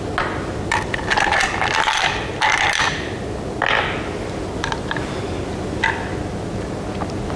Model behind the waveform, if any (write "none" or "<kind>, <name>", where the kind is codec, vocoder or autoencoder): none